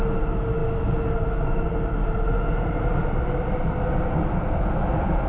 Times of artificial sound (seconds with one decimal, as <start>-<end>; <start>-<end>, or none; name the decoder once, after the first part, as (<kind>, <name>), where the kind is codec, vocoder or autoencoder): none